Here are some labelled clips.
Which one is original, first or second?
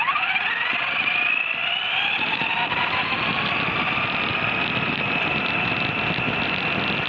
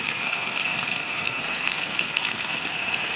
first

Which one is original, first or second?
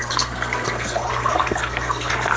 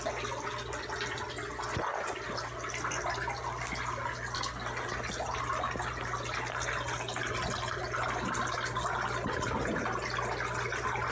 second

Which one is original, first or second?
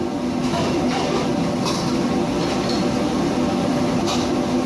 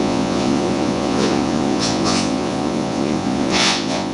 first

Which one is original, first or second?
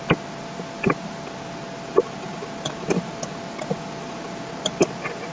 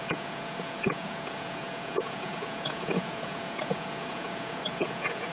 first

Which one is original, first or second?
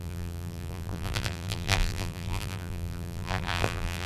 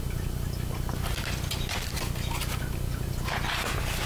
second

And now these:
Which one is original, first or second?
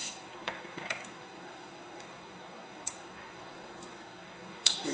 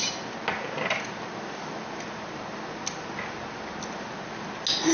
second